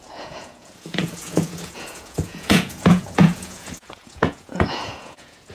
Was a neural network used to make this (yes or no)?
yes